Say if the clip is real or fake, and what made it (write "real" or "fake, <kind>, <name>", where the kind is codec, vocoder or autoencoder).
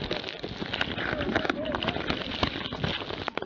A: real